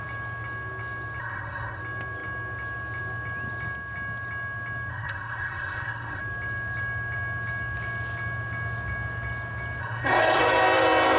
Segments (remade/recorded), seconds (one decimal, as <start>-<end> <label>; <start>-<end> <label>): 0.0-1.2 recorded; 1.2-1.8 remade; 1.8-4.9 recorded; 4.9-6.2 remade; 6.2-9.8 recorded; 9.8-10.4 remade; 10.4-11.2 recorded